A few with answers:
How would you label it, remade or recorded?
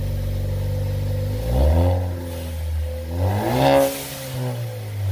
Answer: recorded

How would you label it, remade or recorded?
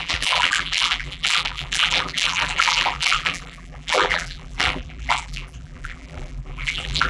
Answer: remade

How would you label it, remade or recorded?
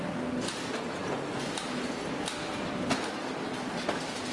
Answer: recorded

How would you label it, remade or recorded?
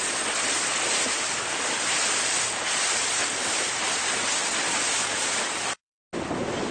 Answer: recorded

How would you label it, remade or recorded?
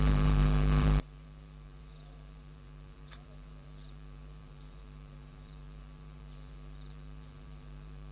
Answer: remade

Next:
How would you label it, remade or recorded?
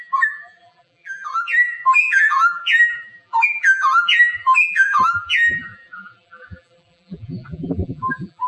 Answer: remade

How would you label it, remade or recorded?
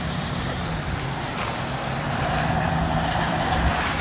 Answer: remade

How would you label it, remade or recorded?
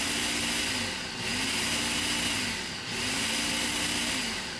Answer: recorded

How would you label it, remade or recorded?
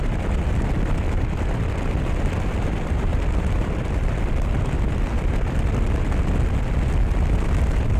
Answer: recorded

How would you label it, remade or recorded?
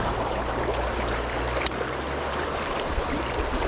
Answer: remade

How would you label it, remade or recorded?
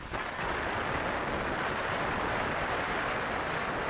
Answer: remade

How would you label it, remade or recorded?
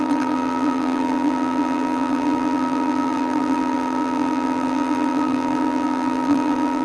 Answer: remade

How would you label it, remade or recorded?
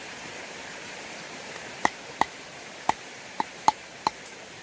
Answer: remade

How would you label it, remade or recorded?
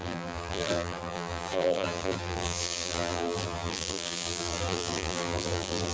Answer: remade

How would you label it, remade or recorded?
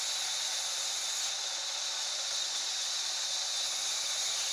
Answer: recorded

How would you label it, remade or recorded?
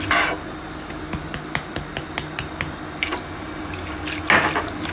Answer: recorded